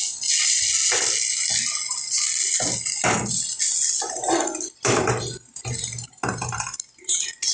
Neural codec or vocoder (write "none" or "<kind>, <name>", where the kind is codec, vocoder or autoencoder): none